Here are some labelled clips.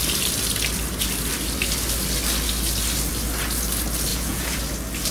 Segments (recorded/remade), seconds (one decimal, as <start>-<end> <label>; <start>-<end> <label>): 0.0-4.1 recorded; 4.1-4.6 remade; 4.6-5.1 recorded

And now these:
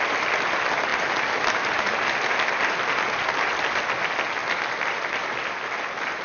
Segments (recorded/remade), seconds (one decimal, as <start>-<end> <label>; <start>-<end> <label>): 0.0-6.2 recorded

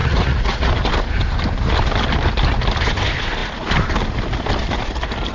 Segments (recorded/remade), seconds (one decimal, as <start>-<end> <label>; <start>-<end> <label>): 0.0-0.7 remade; 0.7-5.3 recorded

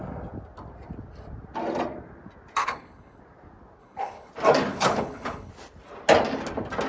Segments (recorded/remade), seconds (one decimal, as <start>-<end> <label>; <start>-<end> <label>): 0.0-2.6 recorded; 2.6-3.2 remade; 3.2-3.8 recorded; 3.8-4.3 remade; 4.3-4.7 recorded; 4.7-5.5 remade; 5.5-6.9 recorded

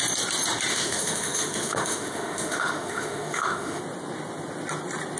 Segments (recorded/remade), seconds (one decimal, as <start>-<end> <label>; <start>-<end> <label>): 0.0-0.7 recorded; 0.7-3.8 remade; 3.8-5.2 recorded